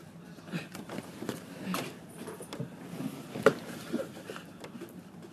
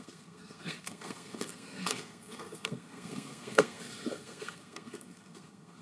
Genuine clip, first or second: first